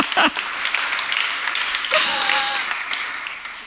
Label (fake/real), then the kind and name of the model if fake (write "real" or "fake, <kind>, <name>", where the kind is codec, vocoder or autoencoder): real